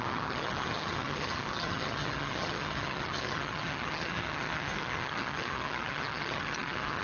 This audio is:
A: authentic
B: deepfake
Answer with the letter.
B